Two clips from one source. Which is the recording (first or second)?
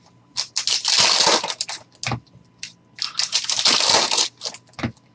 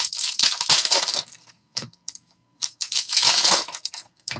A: first